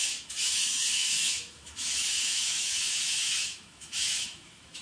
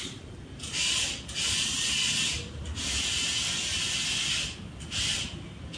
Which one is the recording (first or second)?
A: second